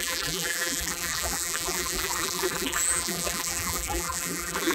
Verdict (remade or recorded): remade